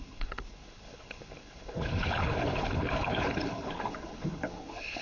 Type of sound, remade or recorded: remade